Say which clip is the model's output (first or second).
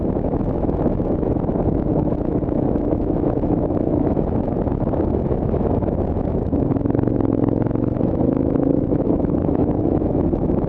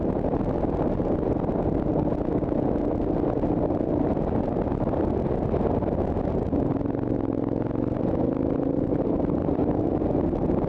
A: first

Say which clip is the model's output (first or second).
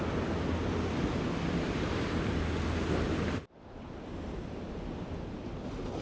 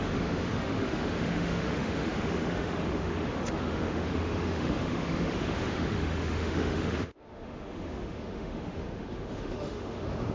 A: second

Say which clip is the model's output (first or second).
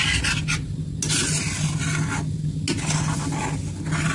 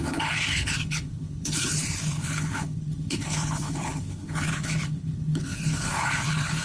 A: second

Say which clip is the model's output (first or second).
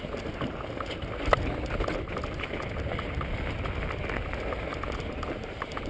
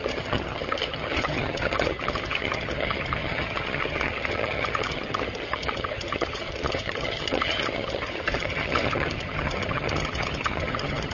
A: second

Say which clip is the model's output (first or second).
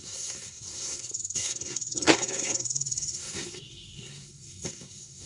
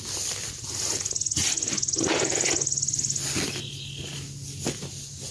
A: first